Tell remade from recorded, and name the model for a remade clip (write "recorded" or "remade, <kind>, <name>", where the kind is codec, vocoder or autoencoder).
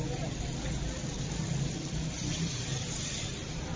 recorded